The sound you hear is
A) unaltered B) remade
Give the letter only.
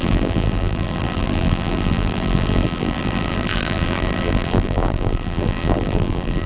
B